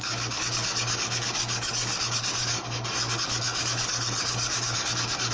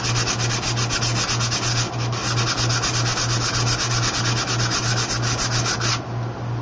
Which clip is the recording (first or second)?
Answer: second